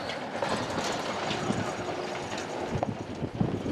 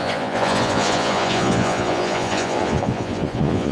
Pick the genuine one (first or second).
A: first